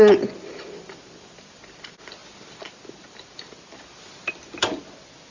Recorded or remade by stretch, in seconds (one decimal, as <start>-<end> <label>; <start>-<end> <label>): 0.0-5.3 recorded

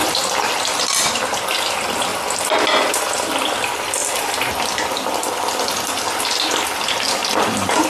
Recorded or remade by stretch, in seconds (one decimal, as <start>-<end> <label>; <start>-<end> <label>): 0.0-7.2 recorded; 7.2-7.9 remade

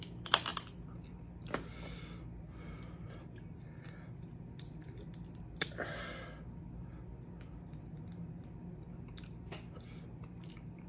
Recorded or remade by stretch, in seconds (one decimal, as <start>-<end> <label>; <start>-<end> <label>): 0.0-10.9 recorded

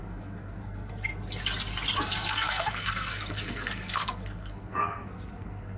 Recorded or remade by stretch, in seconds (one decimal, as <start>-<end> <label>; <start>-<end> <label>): 0.0-1.1 remade; 1.1-2.0 recorded; 2.0-5.8 remade

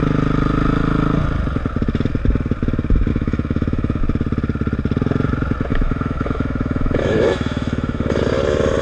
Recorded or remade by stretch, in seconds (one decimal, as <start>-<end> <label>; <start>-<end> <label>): 0.0-3.1 recorded; 3.1-4.0 remade; 4.0-5.7 recorded; 5.7-8.2 remade; 8.2-8.8 recorded

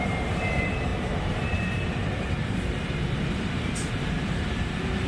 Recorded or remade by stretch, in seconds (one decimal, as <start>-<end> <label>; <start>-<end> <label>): 0.0-5.1 remade